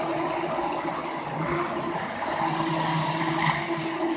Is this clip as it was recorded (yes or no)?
yes